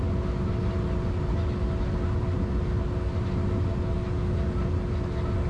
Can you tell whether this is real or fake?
real